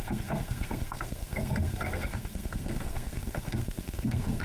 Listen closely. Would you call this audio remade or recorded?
remade